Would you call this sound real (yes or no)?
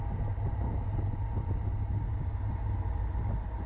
yes